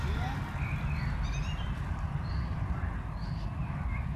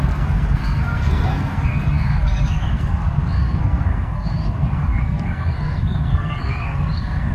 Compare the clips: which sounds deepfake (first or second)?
second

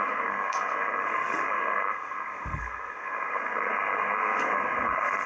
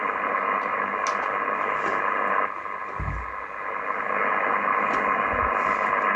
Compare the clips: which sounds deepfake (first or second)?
first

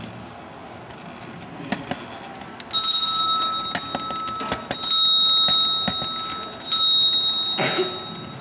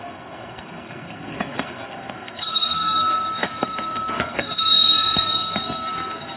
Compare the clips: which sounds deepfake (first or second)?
second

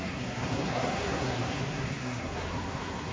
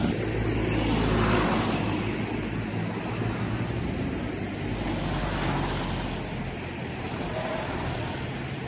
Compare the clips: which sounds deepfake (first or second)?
first